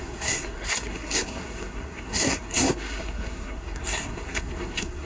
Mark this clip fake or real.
fake